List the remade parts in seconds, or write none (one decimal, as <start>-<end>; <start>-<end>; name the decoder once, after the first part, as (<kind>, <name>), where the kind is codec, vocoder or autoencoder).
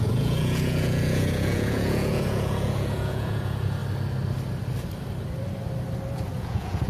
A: 0.0-3.8 (vocoder, Vocos); 6.3-6.9